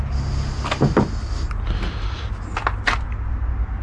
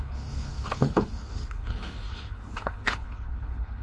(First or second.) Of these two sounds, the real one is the first